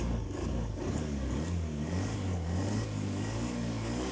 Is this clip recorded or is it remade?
remade